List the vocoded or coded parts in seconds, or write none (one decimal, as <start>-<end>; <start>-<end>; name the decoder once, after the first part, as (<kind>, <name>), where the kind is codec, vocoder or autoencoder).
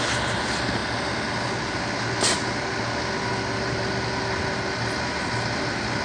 none